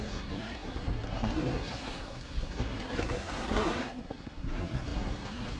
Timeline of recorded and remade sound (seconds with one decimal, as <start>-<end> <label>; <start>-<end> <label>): 0.0-5.6 remade